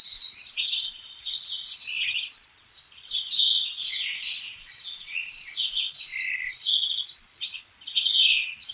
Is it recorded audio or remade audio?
remade